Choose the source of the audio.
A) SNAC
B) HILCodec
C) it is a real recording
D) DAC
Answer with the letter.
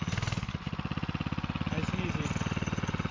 C